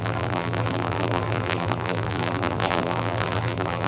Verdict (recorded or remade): remade